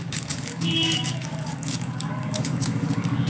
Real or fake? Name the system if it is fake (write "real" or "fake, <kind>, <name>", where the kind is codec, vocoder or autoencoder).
fake, codec, DAC